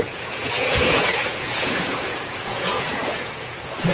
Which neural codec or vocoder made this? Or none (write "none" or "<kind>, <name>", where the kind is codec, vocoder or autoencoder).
vocoder, Vocos